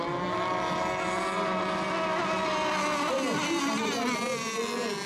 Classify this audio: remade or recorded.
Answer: recorded